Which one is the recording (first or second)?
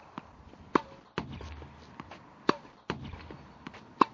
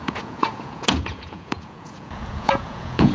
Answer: first